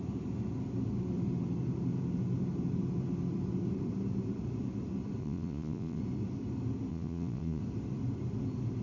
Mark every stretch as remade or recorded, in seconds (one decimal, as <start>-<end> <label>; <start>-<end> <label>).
0.0-5.2 recorded; 5.2-6.0 remade; 6.0-6.9 recorded; 6.9-7.6 remade; 7.6-8.8 recorded